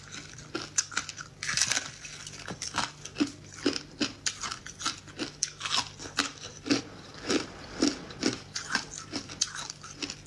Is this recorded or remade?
recorded